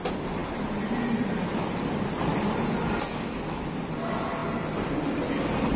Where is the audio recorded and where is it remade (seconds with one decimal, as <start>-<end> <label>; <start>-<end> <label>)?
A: 0.0-0.4 recorded; 0.4-3.9 remade; 3.9-5.8 recorded